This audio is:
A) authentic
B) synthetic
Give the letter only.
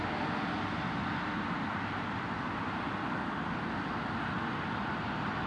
A